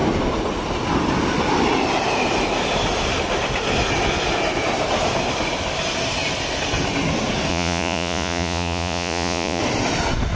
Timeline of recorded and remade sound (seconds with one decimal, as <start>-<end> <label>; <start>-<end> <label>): 0.0-7.5 recorded; 7.5-9.6 remade; 9.6-10.4 recorded